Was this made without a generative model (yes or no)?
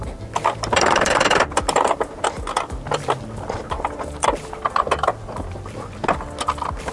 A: yes